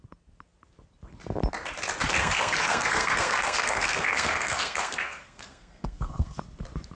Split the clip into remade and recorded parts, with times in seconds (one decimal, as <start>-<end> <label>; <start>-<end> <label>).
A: 0.0-2.2 recorded; 2.2-6.4 remade; 6.4-7.0 recorded